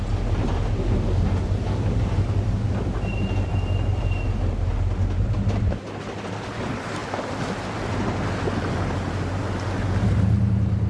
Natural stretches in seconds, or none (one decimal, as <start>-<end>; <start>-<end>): 0.0-10.9